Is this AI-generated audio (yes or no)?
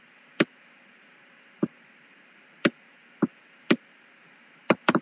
yes